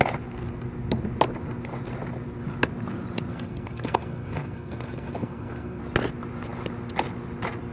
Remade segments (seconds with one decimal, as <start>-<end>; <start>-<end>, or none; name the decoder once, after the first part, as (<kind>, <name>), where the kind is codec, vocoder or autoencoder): 3.3-5.8 (codec, SNAC)